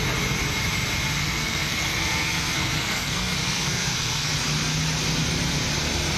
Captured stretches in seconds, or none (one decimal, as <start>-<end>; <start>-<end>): 0.0-1.2; 4.3-6.2